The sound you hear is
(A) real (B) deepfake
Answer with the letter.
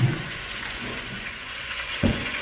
B